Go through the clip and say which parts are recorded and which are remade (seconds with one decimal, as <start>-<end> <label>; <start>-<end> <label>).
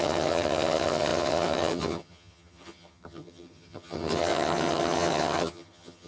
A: 0.0-6.1 remade